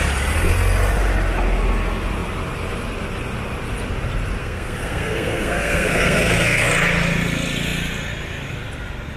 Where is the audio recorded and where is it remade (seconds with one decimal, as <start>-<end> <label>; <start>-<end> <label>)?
0.0-4.4 recorded; 4.4-6.7 remade; 6.7-9.2 recorded

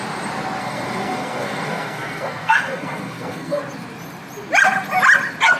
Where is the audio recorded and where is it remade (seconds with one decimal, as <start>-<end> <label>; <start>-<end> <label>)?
0.0-0.6 recorded; 0.6-3.6 remade; 3.6-5.6 recorded

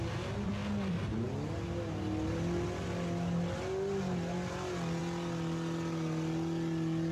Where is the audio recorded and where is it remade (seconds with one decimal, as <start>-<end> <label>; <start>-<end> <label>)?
0.0-7.1 recorded

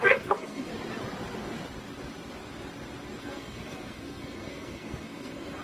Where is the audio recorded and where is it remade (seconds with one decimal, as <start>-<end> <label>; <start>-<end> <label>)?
0.0-0.7 remade; 0.7-3.2 recorded; 3.2-5.6 remade

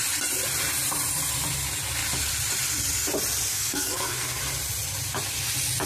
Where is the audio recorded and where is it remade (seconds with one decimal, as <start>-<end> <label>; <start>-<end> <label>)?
0.0-3.5 recorded; 3.5-4.4 remade; 4.4-5.9 recorded

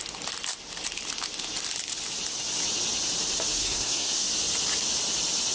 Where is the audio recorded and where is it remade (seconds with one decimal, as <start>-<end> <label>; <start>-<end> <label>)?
0.0-3.6 recorded; 3.6-4.3 remade; 4.3-5.5 recorded